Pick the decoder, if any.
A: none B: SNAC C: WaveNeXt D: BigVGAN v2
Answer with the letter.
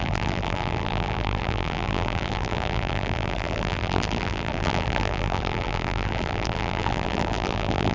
D